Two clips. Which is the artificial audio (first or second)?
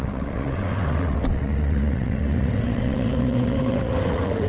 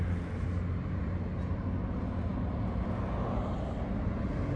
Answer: first